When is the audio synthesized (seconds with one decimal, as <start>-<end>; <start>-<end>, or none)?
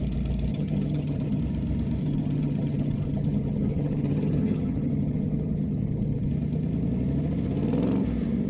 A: 0.5-1.4; 2.0-6.3